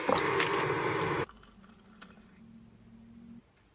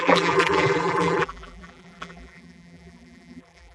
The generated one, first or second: second